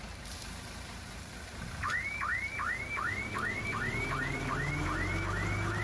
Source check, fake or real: real